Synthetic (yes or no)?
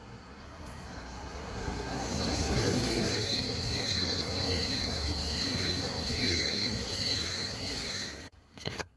yes